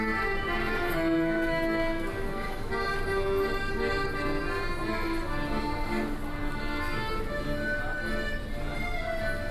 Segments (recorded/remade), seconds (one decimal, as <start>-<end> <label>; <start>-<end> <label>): 0.0-0.6 recorded; 0.6-2.7 remade; 2.7-6.6 recorded; 6.6-7.1 remade; 7.1-9.5 recorded